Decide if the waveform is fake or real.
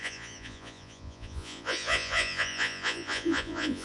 fake